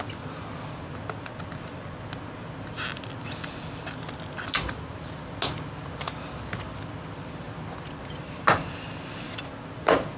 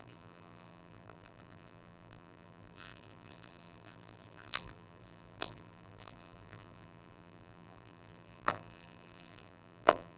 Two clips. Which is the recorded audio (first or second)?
first